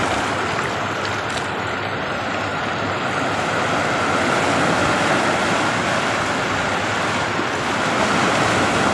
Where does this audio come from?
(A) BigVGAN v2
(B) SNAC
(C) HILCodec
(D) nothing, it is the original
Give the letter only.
D